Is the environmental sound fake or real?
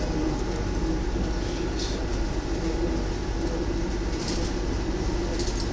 real